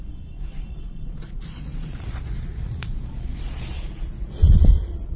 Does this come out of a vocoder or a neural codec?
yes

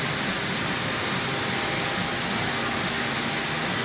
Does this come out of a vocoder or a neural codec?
no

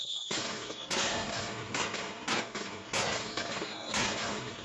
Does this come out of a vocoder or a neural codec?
yes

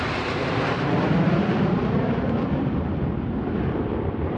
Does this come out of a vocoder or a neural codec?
yes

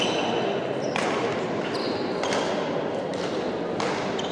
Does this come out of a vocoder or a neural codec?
no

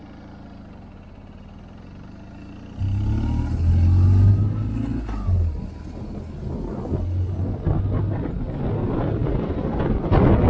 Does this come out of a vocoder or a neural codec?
no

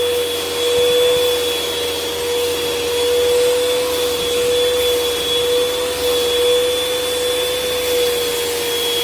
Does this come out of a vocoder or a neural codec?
no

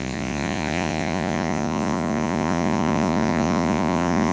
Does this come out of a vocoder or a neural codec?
yes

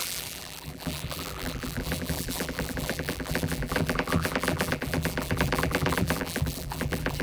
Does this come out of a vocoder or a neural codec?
yes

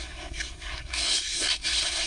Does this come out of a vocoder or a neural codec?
yes